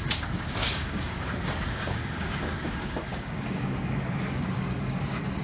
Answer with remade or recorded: remade